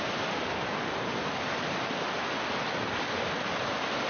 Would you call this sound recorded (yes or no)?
yes